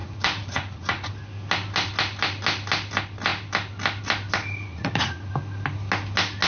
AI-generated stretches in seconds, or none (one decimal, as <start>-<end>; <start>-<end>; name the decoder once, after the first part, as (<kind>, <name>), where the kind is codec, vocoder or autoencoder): 0.0-1.1 (vocoder, Vocos); 4.7-5.3